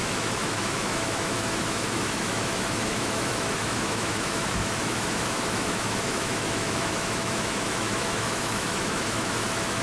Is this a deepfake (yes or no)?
yes